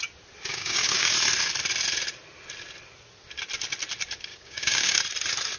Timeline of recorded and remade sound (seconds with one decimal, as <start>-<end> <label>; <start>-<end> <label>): 0.0-0.5 recorded; 0.5-1.1 remade; 1.1-4.3 recorded; 4.3-5.0 remade; 5.0-5.6 recorded